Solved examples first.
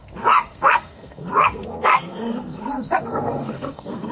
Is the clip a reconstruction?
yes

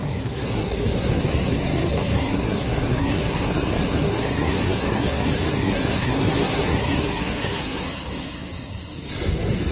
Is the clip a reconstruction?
yes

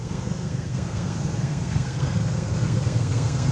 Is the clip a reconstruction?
yes